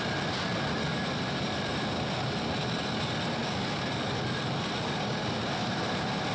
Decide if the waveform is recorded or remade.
remade